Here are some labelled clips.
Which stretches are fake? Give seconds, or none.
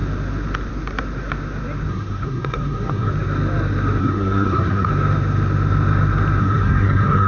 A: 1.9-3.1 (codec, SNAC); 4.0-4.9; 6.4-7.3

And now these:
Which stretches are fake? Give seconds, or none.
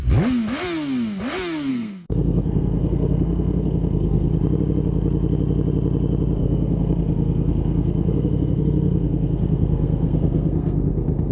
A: 1.7-4.3 (codec, SNAC); 6.4-11.3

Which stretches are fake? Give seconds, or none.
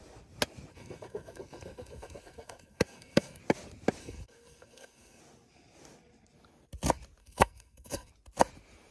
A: 0.7-3.4 (codec, SNAC); 4.0-5.2; 7.2-8.1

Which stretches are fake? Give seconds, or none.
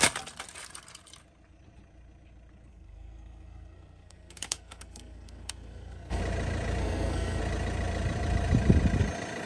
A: 2.7-6.2 (codec, SNAC); 6.8-7.4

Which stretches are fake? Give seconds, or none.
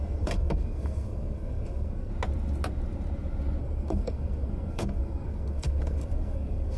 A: 0.0-2.1 (codec, SNAC); 3.6-6.8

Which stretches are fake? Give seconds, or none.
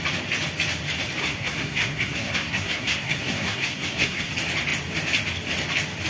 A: 1.2-4.3 (codec, SNAC)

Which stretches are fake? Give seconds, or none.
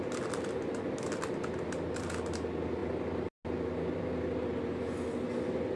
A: none